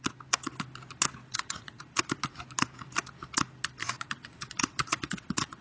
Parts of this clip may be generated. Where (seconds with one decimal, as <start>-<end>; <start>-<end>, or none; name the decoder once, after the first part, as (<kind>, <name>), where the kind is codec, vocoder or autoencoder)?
1.2-1.8 (vocoder, WaveNeXt); 3.8-5.6